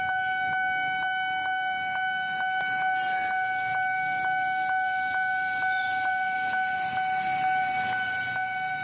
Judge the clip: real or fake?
real